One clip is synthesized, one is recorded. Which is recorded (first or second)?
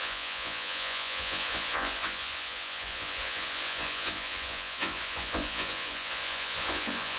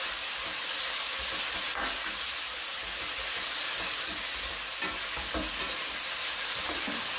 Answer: second